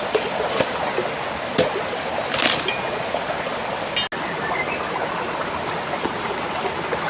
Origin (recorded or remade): recorded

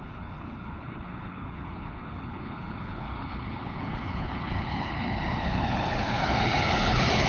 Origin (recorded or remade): remade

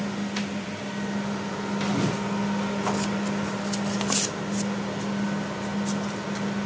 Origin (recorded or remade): recorded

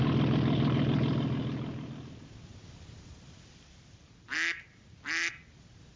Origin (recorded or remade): recorded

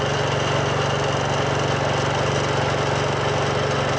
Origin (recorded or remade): recorded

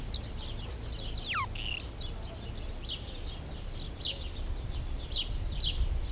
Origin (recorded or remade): recorded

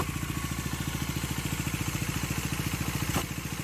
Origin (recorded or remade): recorded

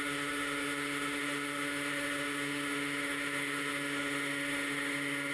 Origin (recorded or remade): remade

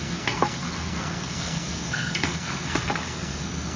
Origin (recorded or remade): remade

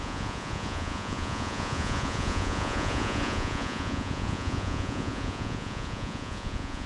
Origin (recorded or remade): remade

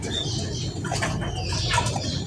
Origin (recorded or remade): recorded